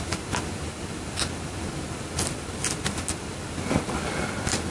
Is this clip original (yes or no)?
yes